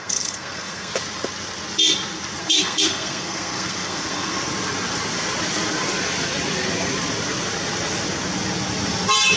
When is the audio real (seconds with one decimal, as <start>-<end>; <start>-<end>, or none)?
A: 0.9-2.4; 4.5-9.4